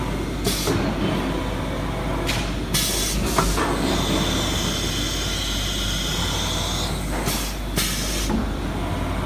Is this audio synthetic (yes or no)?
no